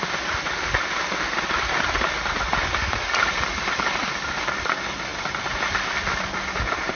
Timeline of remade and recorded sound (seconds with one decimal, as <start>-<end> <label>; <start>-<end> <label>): 0.0-6.9 recorded